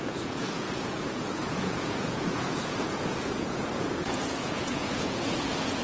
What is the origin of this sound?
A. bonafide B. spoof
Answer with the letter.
B